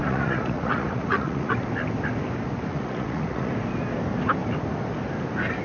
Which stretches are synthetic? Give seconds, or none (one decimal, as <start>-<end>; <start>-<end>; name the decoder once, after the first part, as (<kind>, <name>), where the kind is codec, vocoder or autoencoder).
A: 0.0-1.5 (vocoder, Vocos); 2.7-3.5

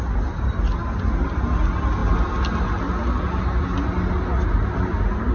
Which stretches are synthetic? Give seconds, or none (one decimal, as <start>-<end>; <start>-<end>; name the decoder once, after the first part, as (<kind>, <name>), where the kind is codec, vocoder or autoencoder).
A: none

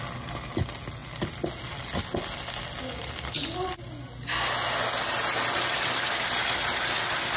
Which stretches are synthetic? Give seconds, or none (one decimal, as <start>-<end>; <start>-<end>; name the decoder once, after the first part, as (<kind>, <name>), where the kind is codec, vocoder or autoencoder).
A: none

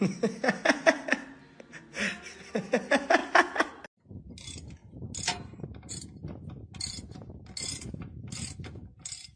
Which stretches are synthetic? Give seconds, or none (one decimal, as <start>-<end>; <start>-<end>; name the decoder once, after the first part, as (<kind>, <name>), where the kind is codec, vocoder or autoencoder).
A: none

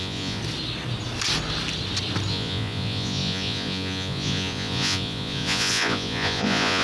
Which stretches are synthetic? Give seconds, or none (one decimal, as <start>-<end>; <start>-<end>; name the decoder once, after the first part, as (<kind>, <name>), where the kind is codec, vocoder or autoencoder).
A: 0.0-0.4 (vocoder, Vocos); 2.3-6.8

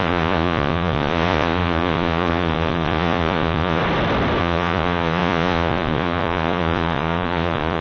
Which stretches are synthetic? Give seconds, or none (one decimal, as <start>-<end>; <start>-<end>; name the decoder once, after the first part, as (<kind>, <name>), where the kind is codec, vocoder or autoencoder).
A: 0.0-3.8 (vocoder, Vocos); 4.4-7.8

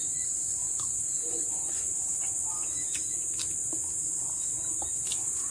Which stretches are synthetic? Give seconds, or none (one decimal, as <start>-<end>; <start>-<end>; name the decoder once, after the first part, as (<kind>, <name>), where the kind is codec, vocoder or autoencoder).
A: 0.6-1.9 (vocoder, Vocos)